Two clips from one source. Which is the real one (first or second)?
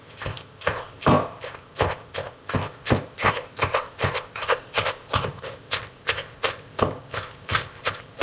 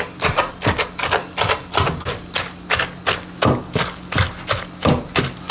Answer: second